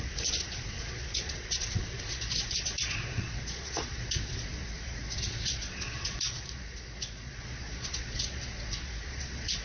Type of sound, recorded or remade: remade